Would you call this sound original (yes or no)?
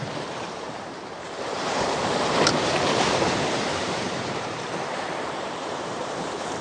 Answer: no